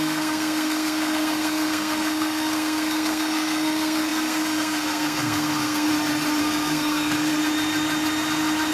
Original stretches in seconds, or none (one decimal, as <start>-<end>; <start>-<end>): 5.9-6.4; 7.3-8.7